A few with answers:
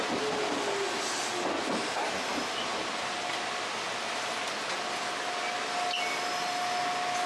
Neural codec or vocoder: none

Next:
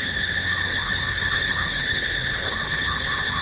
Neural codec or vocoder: codec, HILCodec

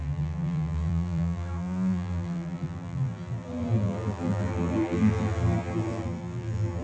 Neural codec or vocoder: vocoder, BigVGAN v2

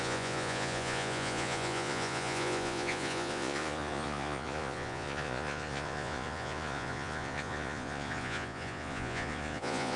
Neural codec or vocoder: vocoder, Vocos